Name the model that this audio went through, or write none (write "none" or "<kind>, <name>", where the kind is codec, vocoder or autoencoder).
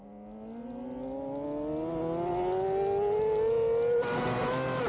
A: none